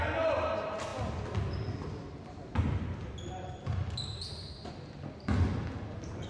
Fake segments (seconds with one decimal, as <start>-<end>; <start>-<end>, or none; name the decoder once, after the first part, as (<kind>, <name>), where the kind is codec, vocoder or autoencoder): none